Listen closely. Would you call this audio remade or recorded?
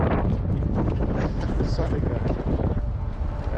recorded